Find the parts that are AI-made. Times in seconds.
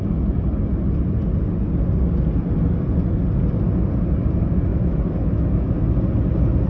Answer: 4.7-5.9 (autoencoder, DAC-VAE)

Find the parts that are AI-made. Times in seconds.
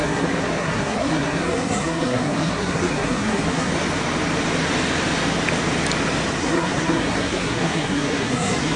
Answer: 0.0-3.7 (codec, SNAC); 6.4-8.8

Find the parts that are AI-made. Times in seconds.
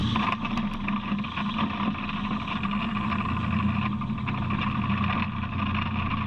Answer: none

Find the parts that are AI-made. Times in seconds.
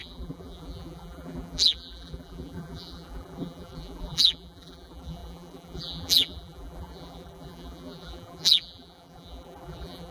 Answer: 0.0-10.1 (vocoder, BigVGAN v2)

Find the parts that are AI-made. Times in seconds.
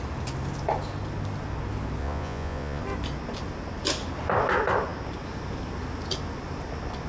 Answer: 2.0-2.8 (vocoder, Vocos)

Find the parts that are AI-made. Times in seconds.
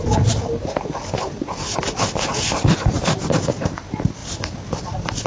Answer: none